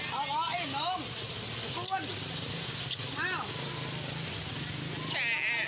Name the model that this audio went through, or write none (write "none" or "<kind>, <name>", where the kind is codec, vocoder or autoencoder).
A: none